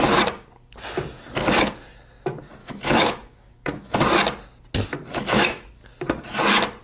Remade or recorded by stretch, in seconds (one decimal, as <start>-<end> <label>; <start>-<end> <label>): 0.0-2.6 recorded; 2.6-3.9 remade; 3.9-5.1 recorded; 5.1-5.8 remade; 5.8-6.8 recorded